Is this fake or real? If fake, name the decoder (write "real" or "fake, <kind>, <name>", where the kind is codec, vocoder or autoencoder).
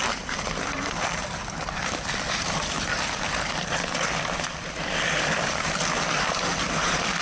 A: fake, vocoder, BigVGAN v2